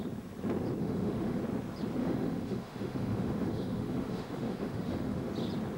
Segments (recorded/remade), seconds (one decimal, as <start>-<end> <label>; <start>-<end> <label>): 0.0-0.8 recorded; 0.8-1.4 remade; 1.4-2.0 recorded; 2.0-5.3 remade; 5.3-5.8 recorded